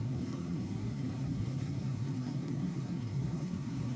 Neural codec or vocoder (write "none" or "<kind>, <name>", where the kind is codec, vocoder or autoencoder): codec, SNAC